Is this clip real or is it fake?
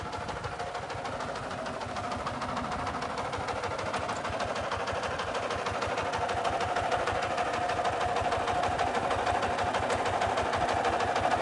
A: real